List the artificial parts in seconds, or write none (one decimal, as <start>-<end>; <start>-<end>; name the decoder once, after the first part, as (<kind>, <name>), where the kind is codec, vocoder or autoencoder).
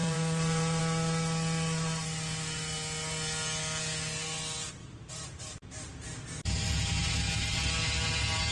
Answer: 0.0-0.8 (vocoder, BigVGAN v2); 4.8-6.3; 7.0-7.6